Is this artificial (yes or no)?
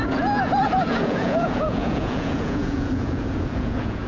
yes